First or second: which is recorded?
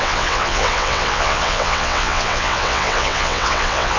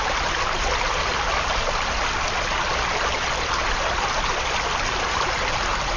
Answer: second